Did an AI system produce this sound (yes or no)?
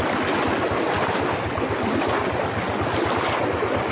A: no